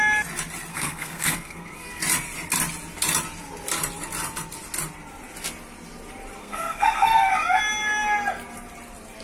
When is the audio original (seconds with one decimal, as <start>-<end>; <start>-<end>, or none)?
0.0-0.7; 2.0-6.4; 7.3-9.2

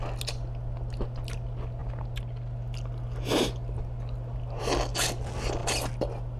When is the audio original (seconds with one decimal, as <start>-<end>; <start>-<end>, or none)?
0.0-6.4

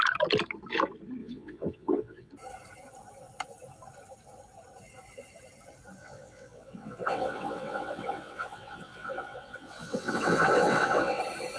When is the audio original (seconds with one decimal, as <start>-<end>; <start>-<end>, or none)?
0.0-1.2; 2.3-6.0; 11.2-11.6

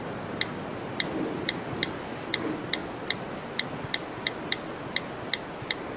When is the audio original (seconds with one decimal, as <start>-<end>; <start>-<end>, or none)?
0.0-6.0

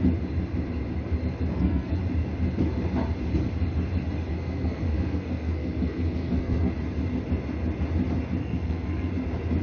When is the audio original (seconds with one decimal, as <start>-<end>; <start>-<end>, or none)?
0.0-1.5; 2.0-4.3; 6.7-8.4; 9.1-9.6